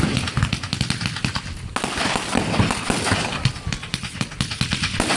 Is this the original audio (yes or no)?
yes